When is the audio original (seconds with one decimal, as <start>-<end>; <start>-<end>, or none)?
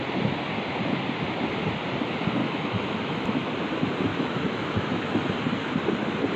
0.0-2.4; 3.5-4.1; 5.3-6.4